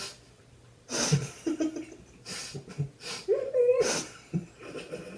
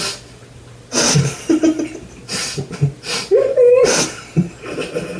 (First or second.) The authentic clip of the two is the second